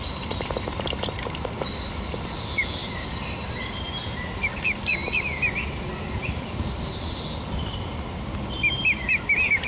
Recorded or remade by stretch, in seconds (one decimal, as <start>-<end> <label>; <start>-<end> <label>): 0.0-9.7 recorded